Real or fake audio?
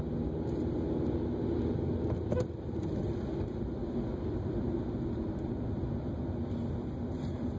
real